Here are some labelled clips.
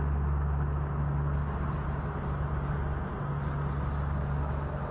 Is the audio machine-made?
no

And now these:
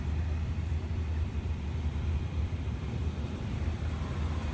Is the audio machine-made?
yes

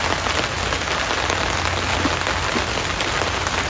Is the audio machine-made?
no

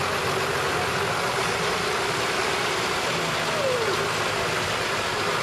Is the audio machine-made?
no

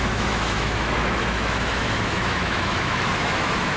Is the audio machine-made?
yes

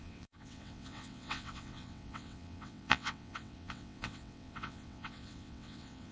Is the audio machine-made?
yes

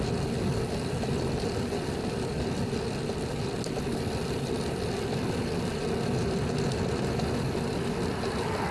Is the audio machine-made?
no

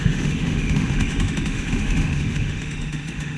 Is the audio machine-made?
yes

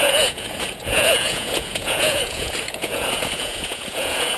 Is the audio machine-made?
yes